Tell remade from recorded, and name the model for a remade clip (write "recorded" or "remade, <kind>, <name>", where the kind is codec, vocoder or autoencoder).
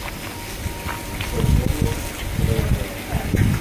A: recorded